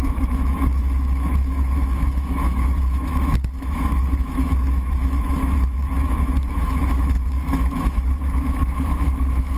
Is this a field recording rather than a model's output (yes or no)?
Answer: no